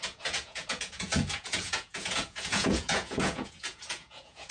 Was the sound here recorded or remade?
remade